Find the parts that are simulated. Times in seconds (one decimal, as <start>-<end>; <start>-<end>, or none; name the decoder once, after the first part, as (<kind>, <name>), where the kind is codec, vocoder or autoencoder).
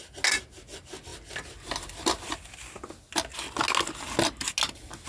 none